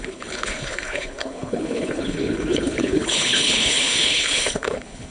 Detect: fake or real fake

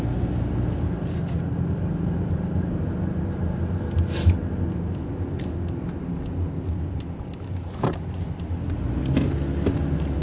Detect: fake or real real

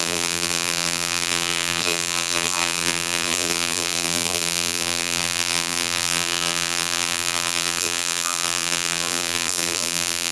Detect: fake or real fake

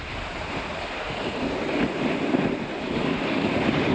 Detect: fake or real real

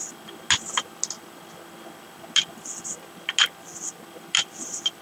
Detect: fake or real real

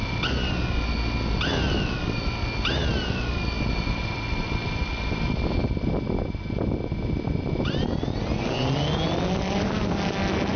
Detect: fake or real real